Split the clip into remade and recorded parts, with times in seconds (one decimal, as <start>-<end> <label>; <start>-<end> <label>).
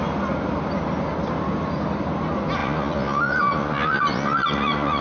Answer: 0.0-2.6 recorded; 2.6-5.0 remade